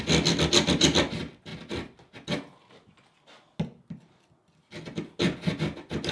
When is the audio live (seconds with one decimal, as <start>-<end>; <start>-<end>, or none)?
0.0-6.1